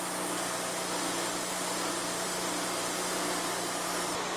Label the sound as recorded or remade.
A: recorded